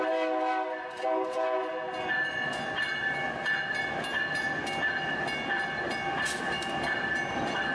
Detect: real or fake real